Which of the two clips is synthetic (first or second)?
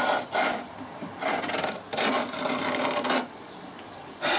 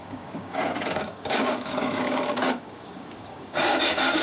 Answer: second